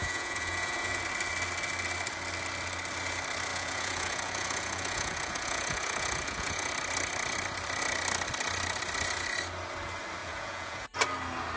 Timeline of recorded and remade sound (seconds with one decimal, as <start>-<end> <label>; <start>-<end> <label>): 0.0-1.0 remade; 1.0-3.5 recorded; 3.5-6.7 remade; 6.7-10.2 recorded; 10.2-10.9 remade; 10.9-11.6 recorded

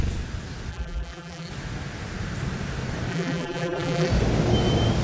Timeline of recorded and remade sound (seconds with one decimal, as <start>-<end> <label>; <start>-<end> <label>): 0.0-0.7 recorded; 0.7-1.5 remade; 1.5-3.1 recorded; 3.1-4.1 remade; 4.1-5.0 recorded

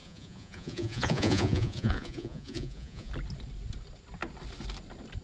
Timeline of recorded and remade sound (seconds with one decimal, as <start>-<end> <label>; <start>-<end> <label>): 0.0-3.1 remade; 3.1-5.2 recorded

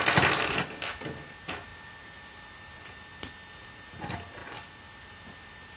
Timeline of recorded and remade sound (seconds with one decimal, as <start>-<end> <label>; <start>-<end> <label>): 0.0-1.7 recorded; 1.7-3.3 remade; 3.3-4.4 recorded; 4.4-5.0 remade; 5.0-5.8 recorded